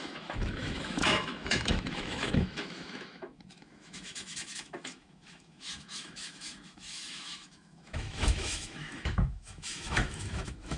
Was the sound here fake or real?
fake